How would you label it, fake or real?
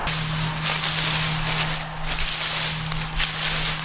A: real